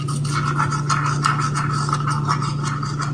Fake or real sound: real